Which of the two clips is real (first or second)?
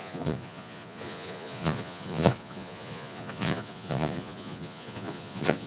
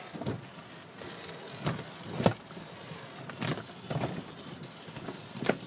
second